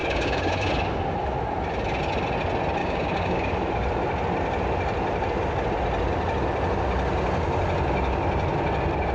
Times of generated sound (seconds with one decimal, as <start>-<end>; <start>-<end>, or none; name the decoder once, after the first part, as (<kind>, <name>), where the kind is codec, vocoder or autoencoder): 0.0-0.7 (codec, DAC); 2.8-3.5